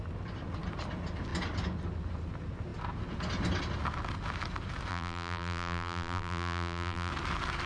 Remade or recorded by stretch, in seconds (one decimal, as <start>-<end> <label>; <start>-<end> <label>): 0.0-4.9 recorded; 4.9-7.1 remade; 7.1-7.7 recorded